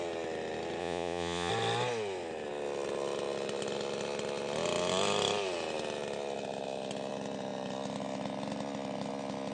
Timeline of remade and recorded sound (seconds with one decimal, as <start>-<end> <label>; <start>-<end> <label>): 0.0-0.8 recorded; 0.8-1.5 remade; 1.5-9.5 recorded